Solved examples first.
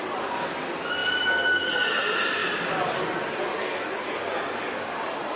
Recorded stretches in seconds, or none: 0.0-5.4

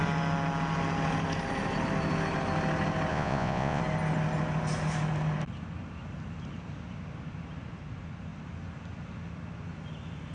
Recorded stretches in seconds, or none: 0.0-3.1; 3.8-10.3

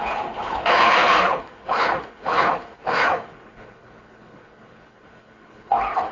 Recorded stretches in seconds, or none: none

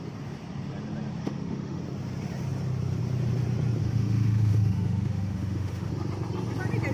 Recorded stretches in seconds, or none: 0.0-1.2; 1.8-3.8; 5.9-6.9